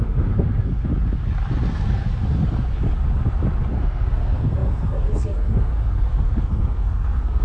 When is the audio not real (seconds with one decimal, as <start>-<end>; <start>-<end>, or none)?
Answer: 0.0-0.9; 1.7-2.1; 3.7-7.4